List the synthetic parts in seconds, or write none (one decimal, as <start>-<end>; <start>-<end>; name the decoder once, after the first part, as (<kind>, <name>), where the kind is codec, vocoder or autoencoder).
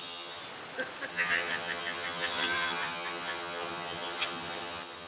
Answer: 0.0-0.4 (vocoder, HiFi-GAN); 1.1-5.1